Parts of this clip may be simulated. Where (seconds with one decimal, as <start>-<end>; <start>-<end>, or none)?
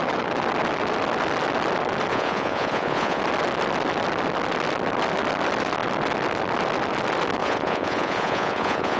2.1-3.2; 7.4-9.0